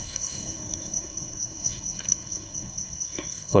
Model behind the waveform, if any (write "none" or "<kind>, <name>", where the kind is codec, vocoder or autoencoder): codec, SNAC